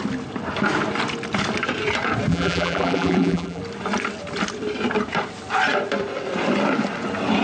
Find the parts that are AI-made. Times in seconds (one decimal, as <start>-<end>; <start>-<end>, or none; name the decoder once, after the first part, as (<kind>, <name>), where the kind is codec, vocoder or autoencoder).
2.3-3.6 (vocoder, BigVGAN v2)